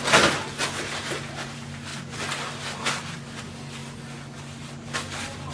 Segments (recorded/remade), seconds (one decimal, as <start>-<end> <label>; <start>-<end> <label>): 0.0-5.5 recorded